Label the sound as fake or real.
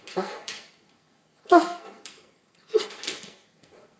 fake